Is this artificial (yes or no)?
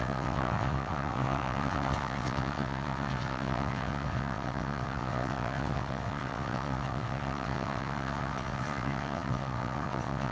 yes